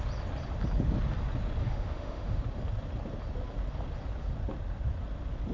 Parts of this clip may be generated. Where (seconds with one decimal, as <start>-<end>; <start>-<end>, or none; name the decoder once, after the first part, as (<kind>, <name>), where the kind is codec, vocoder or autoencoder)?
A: 1.6-2.4 (autoencoder, DAC-VAE)